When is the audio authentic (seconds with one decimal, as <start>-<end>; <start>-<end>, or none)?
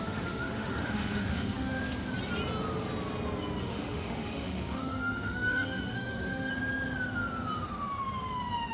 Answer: 1.8-3.6; 6.5-8.7